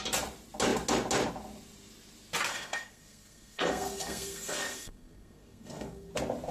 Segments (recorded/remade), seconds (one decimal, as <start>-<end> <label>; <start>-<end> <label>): 0.0-2.5 recorded; 2.5-6.1 remade; 6.1-6.5 recorded